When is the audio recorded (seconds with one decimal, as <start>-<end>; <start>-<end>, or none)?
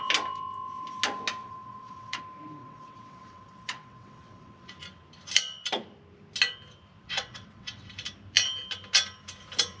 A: 0.0-1.4; 2.2-2.6; 4.7-7.0; 7.9-9.8